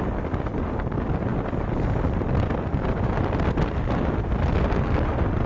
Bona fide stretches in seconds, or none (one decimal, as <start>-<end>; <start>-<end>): 0.0-5.5